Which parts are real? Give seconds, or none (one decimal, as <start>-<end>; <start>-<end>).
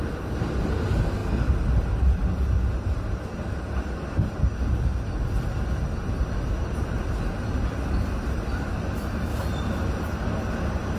1.2-1.8; 4.5-5.2